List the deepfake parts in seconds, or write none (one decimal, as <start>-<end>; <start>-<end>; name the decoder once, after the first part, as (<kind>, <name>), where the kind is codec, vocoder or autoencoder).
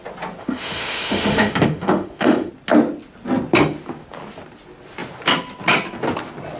0.4-2.5 (autoencoder, DAC-VAE)